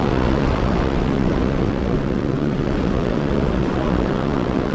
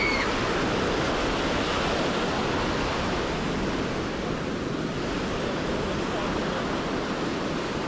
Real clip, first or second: second